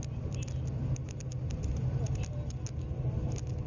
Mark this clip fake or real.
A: real